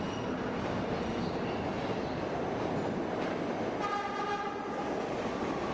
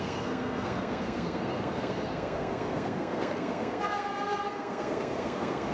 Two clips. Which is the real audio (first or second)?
first